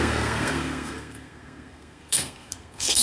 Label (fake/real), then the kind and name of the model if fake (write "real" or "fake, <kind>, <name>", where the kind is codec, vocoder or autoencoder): fake, codec, SNAC